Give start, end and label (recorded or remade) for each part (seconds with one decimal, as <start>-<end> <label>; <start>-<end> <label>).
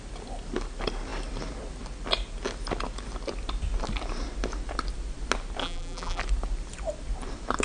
0.0-5.6 recorded; 5.6-6.2 remade; 6.2-7.6 recorded